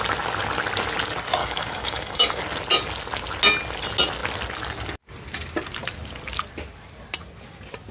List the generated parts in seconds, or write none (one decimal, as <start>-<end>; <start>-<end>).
1.4-2.4